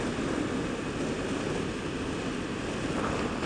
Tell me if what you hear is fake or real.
real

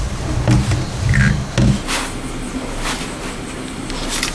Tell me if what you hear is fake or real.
real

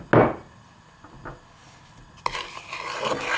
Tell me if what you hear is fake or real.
real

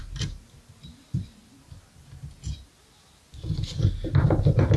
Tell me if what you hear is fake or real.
real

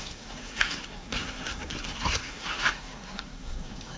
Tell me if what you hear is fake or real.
fake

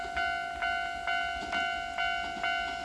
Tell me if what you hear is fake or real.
real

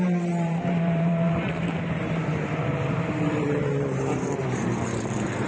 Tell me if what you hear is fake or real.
fake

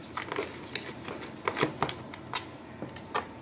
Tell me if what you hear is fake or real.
real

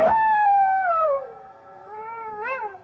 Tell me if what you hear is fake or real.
fake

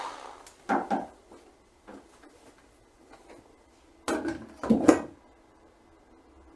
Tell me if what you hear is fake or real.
real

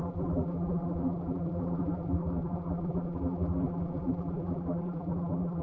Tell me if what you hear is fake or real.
fake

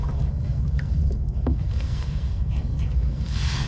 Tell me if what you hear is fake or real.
fake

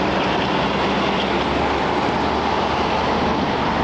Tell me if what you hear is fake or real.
real